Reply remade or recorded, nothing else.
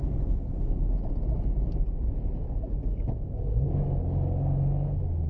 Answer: recorded